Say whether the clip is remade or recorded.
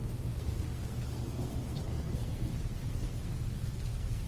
remade